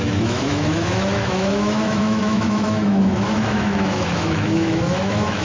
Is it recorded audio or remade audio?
remade